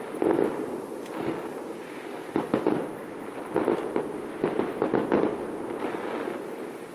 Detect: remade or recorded recorded